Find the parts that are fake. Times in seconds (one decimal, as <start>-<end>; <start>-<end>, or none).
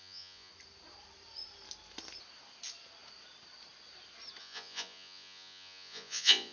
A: 0.0-0.5; 4.4-6.5